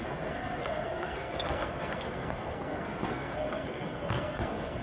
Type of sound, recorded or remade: remade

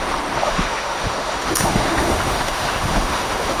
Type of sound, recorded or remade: remade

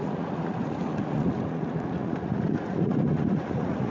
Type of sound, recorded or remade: remade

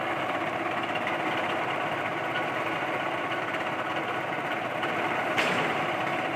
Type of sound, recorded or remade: remade